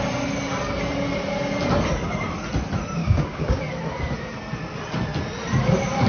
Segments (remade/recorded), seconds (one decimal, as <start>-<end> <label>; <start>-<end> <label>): 0.0-3.0 recorded; 3.0-3.6 remade; 3.6-6.1 recorded